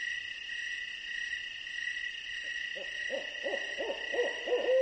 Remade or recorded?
recorded